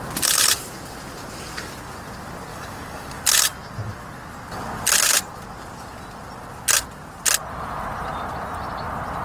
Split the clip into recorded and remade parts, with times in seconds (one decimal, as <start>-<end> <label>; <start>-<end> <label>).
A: 0.0-2.5 recorded; 2.5-3.2 remade; 3.2-9.2 recorded